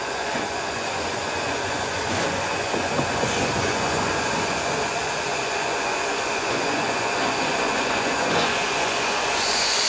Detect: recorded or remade remade